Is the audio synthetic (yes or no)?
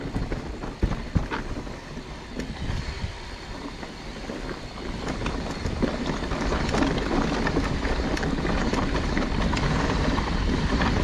no